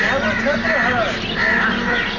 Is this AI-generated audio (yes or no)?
no